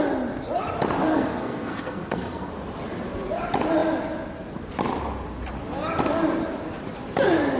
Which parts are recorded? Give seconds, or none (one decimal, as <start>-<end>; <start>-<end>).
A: 0.0-1.1; 2.5-7.6